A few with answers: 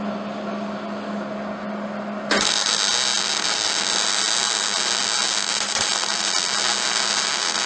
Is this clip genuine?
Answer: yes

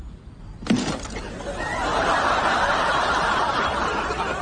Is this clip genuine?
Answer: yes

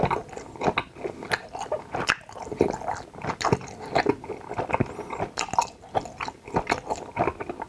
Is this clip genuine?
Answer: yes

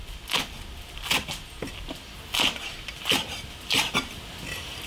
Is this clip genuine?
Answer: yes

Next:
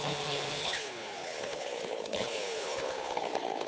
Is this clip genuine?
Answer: no